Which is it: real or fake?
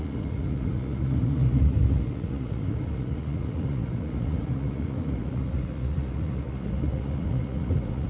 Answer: fake